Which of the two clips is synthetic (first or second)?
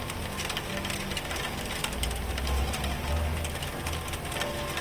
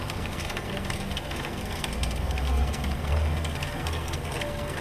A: second